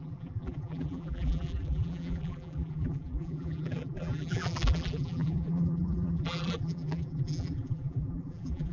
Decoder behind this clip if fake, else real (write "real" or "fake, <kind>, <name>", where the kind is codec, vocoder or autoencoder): fake, vocoder, BigVGAN v2